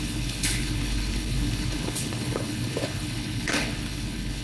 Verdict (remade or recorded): remade